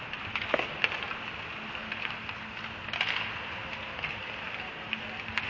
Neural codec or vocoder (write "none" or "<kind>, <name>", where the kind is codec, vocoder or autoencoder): none